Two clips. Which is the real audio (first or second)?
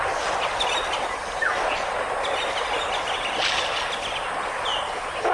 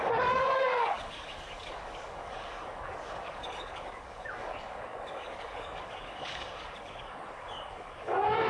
first